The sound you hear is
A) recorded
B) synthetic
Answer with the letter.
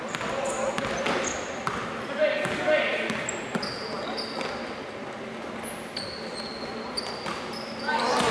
A